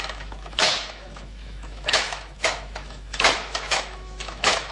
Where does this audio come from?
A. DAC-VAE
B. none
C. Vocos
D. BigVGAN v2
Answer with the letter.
A